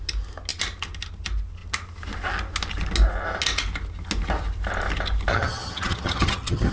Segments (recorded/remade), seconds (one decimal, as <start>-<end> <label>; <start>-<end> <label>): 0.0-5.3 recorded; 5.3-6.7 remade